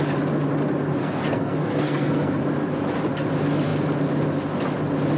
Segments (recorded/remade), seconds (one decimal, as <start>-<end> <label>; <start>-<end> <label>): 0.0-1.0 recorded; 1.0-2.4 remade; 2.4-5.2 recorded